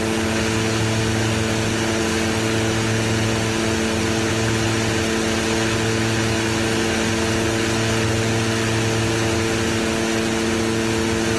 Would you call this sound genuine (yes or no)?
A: yes